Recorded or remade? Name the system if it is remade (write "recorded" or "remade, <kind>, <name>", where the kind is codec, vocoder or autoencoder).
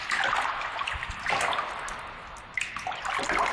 recorded